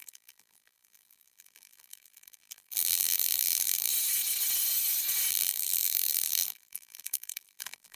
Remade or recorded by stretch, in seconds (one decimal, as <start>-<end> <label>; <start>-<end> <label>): 0.0-3.9 remade; 3.9-5.3 recorded; 5.3-8.0 remade